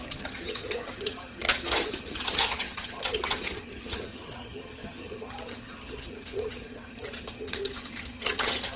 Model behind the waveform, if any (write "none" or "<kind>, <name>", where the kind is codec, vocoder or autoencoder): vocoder, HiFi-GAN